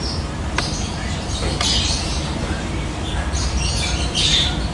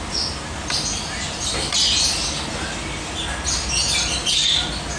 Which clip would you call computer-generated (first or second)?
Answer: first